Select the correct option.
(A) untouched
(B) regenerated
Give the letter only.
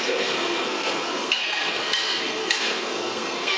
B